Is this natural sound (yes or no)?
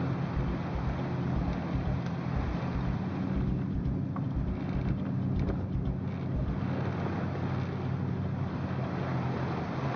yes